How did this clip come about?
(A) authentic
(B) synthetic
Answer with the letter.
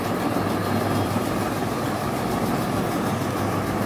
A